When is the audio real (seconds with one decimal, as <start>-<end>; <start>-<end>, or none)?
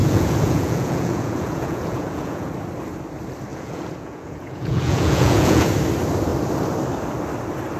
2.5-3.5; 5.7-7.8